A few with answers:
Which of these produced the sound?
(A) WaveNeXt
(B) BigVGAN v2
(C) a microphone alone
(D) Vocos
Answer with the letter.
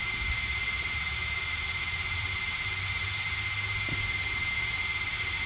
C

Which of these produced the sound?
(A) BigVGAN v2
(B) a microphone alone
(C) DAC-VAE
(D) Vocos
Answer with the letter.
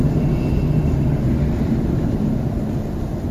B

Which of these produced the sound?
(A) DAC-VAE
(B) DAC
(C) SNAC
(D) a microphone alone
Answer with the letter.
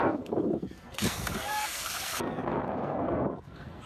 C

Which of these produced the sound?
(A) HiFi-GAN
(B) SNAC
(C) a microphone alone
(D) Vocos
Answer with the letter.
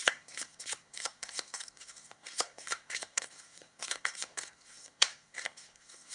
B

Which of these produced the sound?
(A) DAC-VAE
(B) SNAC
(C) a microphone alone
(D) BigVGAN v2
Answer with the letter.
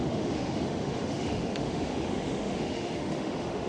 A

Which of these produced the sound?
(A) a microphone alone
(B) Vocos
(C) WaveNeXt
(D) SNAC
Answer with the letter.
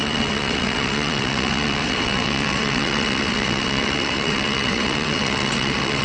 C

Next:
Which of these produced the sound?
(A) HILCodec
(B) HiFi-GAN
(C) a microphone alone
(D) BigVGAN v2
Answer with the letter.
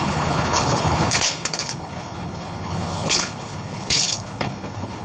A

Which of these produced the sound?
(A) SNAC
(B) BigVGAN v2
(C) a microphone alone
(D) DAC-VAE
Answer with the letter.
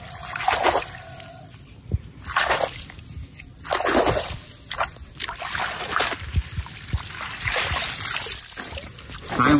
C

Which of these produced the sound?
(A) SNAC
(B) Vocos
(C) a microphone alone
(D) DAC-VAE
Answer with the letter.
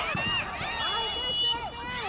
C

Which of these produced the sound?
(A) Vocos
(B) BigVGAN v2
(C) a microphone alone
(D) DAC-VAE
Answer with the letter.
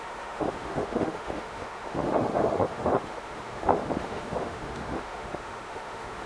D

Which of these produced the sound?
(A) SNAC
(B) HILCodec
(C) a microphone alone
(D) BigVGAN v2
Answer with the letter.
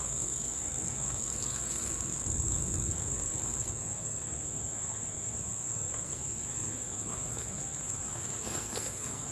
A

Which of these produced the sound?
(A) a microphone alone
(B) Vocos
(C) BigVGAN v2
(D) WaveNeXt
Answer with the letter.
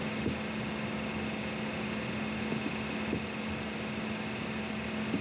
A